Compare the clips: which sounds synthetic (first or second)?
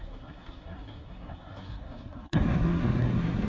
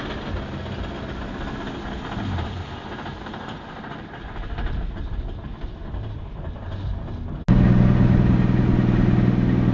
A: first